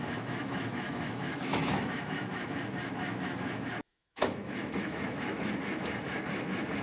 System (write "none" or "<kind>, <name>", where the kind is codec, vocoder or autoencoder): autoencoder, DAC-VAE